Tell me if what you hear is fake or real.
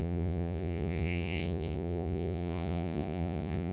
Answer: fake